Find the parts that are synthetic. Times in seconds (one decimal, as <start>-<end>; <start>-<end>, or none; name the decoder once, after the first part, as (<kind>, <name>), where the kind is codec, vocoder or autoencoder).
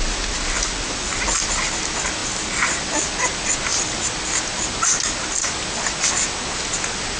none